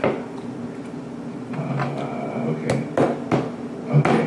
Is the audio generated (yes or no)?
no